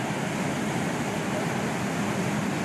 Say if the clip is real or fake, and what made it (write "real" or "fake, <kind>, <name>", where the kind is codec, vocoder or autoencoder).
real